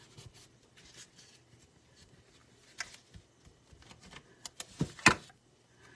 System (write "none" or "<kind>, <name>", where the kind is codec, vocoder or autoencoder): none